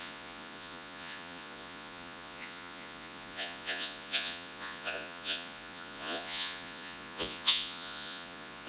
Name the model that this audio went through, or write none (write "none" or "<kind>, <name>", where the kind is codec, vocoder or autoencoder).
vocoder, Vocos